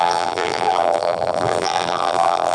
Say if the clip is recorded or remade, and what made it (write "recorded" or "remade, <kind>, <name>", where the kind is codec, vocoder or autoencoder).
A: remade, vocoder, BigVGAN v2